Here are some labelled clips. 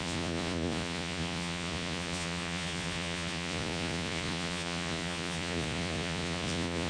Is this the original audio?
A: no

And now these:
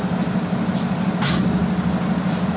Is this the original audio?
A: yes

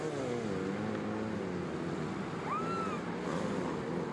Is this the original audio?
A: yes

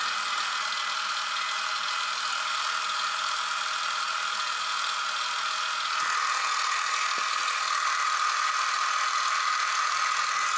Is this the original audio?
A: yes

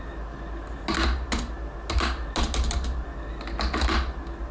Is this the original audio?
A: yes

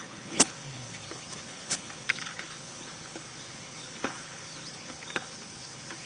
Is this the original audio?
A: no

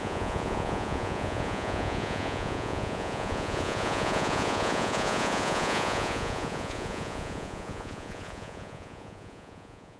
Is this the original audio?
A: no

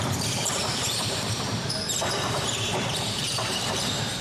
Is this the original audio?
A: no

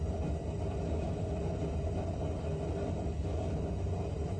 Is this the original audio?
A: yes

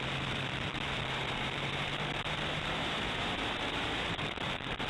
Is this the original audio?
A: no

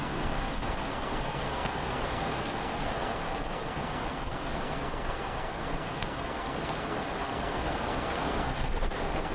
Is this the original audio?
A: no